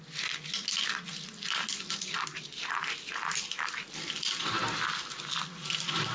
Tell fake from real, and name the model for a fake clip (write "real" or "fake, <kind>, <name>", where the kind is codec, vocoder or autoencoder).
real